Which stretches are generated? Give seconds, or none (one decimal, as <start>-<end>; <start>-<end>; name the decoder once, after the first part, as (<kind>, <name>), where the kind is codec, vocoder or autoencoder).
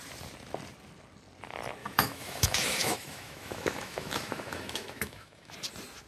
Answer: 1.8-5.5 (autoencoder, DAC-VAE)